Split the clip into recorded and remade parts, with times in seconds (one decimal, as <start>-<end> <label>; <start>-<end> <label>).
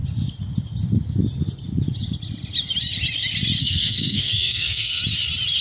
0.0-3.6 recorded; 3.6-5.0 remade; 5.0-5.6 recorded